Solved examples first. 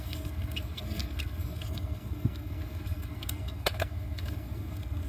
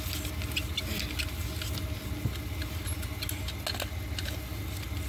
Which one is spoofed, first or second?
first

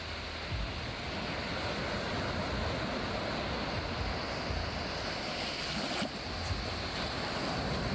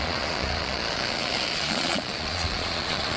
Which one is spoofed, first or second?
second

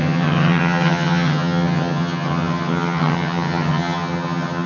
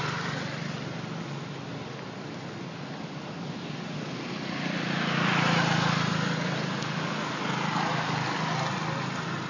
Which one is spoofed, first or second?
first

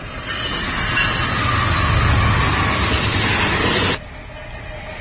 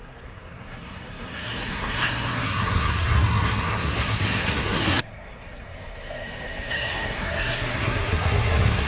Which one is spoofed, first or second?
second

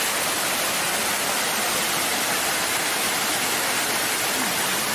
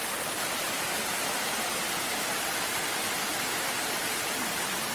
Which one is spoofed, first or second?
second